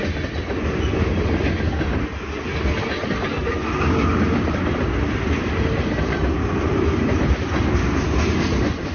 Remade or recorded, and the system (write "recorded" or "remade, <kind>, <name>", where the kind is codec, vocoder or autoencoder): recorded